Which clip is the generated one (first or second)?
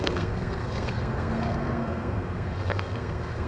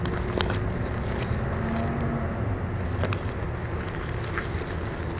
first